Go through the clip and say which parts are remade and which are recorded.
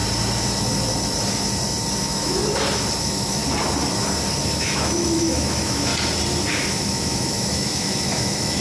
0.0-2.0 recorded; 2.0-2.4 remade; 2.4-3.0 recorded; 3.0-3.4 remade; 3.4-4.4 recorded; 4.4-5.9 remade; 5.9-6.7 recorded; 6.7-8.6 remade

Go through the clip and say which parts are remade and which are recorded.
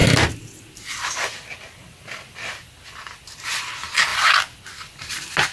0.0-5.5 recorded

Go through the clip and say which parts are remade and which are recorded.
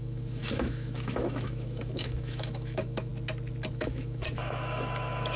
0.0-3.1 remade; 3.1-3.7 recorded; 3.7-5.4 remade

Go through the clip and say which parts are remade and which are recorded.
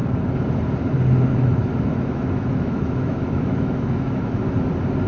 0.0-1.3 recorded; 1.3-4.4 remade; 4.4-5.1 recorded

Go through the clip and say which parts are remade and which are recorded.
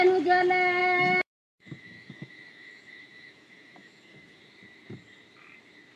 0.0-0.8 recorded; 0.8-4.4 remade; 4.4-6.0 recorded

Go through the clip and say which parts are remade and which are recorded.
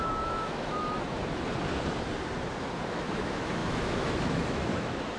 0.0-1.2 remade; 1.2-2.9 recorded; 2.9-5.2 remade